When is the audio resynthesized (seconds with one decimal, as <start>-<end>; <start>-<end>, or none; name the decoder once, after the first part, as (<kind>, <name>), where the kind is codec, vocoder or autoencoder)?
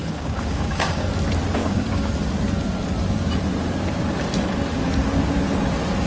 0.0-1.1 (codec, DAC); 1.6-2.1